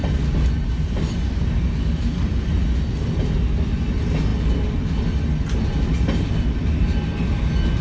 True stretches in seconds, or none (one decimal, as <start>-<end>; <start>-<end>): 0.0-7.8